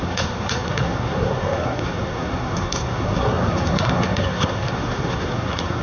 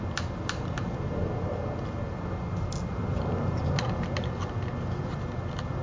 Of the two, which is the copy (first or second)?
first